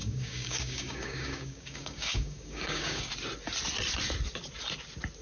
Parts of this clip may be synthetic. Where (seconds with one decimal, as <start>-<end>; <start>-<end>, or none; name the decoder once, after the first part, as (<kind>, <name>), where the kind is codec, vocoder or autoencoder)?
0.0-3.1 (codec, DAC)